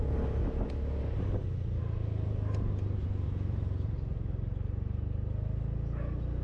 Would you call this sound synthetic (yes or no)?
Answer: no